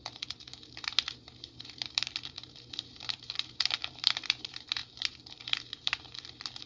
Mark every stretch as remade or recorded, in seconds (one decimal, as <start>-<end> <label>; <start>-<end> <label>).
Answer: 0.0-6.7 remade